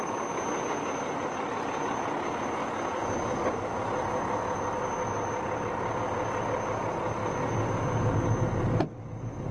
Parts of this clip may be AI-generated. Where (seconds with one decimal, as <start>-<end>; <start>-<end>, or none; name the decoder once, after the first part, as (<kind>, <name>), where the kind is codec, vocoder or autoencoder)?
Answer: none

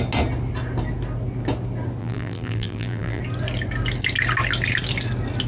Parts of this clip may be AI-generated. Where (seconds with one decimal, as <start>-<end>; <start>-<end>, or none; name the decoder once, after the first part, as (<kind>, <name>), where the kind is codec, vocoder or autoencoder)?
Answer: 2.0-3.2 (vocoder, BigVGAN v2)

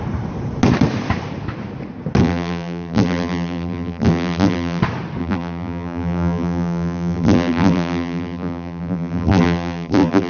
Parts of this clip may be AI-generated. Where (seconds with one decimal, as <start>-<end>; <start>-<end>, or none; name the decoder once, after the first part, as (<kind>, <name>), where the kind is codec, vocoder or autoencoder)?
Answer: 2.2-4.8 (vocoder, BigVGAN v2); 5.2-10.3

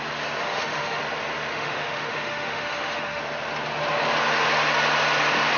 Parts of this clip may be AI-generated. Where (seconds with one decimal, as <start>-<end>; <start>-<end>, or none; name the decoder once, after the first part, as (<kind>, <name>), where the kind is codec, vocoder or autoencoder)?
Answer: 0.4-1.0 (autoencoder, DAC-VAE); 1.5-3.2